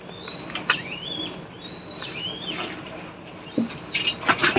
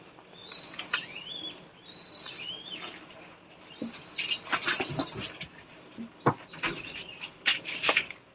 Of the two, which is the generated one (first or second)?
second